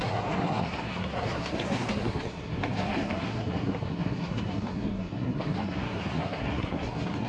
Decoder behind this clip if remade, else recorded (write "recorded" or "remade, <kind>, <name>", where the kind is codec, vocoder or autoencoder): remade, codec, SNAC